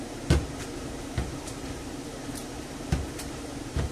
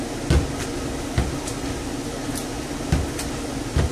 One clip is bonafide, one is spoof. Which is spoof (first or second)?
first